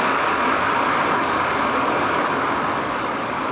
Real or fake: fake